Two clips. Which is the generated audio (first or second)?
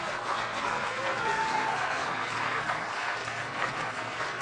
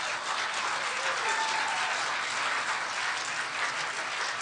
first